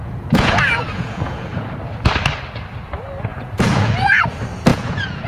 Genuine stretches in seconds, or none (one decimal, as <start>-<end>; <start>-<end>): 1.7-3.3; 4.2-4.7